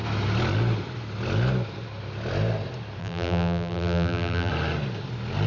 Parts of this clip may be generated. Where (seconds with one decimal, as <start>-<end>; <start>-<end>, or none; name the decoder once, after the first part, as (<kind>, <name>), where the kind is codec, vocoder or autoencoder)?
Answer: 3.0-4.5 (vocoder, BigVGAN v2)